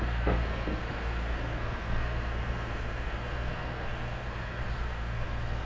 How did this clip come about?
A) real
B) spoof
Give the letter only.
B